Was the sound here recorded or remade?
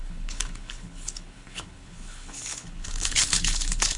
remade